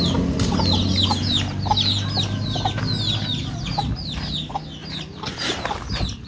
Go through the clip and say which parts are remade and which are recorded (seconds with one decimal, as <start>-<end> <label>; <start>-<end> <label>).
0.0-6.3 recorded